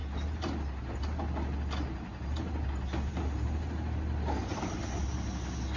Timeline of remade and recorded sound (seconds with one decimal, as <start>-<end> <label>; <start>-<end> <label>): 0.0-5.8 recorded